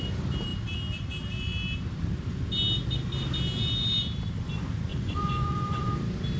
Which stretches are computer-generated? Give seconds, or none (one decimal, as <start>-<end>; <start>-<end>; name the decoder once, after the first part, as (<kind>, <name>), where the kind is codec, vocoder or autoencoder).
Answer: 4.9-5.9 (vocoder, Vocos)